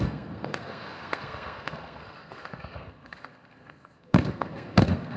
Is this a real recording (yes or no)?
no